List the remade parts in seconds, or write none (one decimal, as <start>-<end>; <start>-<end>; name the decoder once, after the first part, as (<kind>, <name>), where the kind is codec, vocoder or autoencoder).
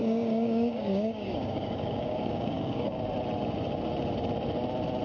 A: 0.0-3.0 (codec, DAC)